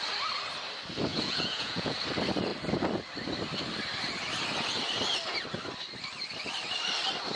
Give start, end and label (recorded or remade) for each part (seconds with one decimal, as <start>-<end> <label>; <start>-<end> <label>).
0.0-1.1 recorded; 1.1-2.0 remade; 2.0-7.4 recorded